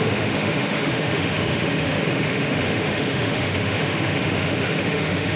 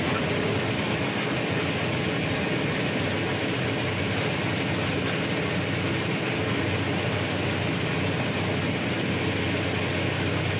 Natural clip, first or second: second